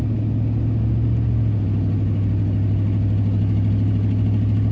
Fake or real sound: real